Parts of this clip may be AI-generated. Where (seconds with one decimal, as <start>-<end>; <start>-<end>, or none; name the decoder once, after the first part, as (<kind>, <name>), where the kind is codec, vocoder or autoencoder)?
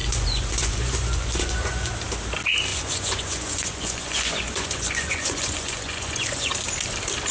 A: 0.0-1.9 (vocoder, Vocos); 2.7-6.5